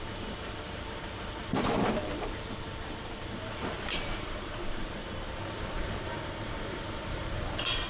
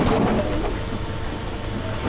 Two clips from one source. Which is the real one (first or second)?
second